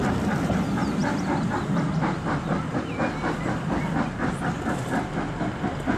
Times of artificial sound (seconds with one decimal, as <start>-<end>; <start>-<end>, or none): none

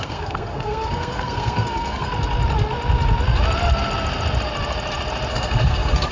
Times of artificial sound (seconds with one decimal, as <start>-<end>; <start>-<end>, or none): 0.0-2.1; 5.3-6.1